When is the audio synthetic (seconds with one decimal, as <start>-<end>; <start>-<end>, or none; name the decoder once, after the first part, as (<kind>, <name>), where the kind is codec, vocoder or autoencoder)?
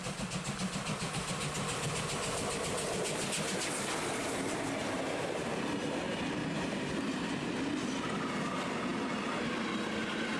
4.2-5.0 (vocoder, BigVGAN v2)